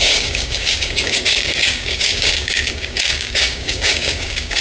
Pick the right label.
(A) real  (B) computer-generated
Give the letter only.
B